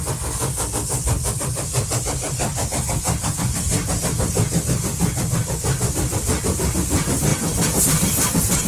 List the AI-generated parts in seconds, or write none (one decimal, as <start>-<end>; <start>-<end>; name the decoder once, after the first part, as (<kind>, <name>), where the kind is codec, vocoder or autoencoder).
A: none